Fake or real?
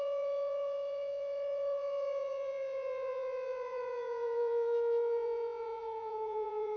fake